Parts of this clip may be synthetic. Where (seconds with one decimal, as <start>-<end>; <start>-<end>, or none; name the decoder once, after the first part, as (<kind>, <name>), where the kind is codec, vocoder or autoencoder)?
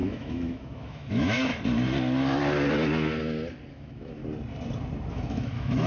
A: 0.0-1.5 (autoencoder, DAC-VAE); 3.7-4.2; 5.1-5.9